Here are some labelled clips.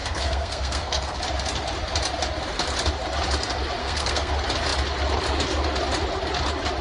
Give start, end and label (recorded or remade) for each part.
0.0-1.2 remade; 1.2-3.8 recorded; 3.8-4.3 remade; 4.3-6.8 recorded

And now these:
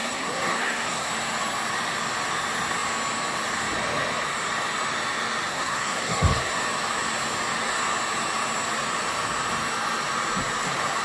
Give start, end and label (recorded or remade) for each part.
0.0-1.1 remade; 1.1-5.5 recorded; 5.5-6.5 remade; 6.5-11.0 recorded

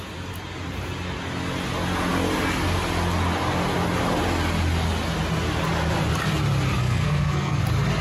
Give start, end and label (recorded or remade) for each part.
0.0-6.8 recorded; 6.8-7.6 remade; 7.6-8.0 recorded

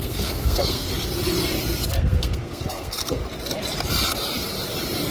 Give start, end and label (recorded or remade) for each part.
0.0-0.9 remade; 0.9-2.0 recorded; 2.0-3.2 remade; 3.2-5.1 recorded

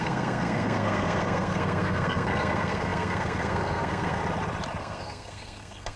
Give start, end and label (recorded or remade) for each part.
0.0-4.2 remade; 4.2-4.8 recorded; 4.8-6.0 remade

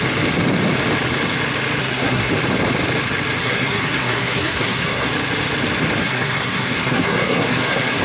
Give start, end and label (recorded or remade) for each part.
0.0-1.8 recorded; 1.8-2.3 remade; 2.3-3.4 recorded; 3.4-5.1 remade; 5.1-6.0 recorded; 6.0-8.0 remade

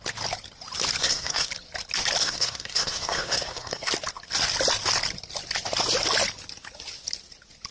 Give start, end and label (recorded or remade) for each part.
0.0-1.0 recorded; 1.0-1.5 remade; 1.5-2.2 recorded; 2.2-3.9 remade; 3.9-7.7 recorded